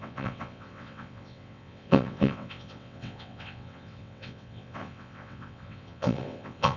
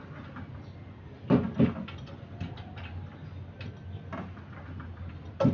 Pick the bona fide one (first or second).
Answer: second